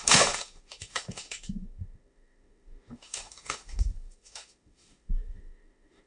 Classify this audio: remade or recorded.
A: remade